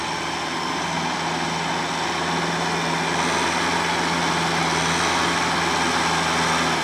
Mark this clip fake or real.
real